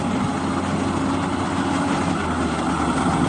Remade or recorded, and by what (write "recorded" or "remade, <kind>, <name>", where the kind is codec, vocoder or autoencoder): recorded